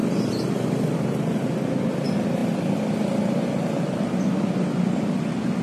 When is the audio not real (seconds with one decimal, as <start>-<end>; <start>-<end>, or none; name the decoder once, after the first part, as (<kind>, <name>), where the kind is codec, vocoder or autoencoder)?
0.0-5.6 (vocoder, BigVGAN v2)